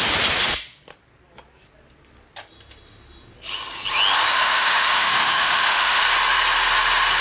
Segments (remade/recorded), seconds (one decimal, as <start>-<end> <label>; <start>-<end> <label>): 0.0-4.3 recorded; 4.3-6.0 remade; 6.0-7.2 recorded